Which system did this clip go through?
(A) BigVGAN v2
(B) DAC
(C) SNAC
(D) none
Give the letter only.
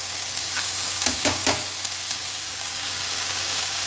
B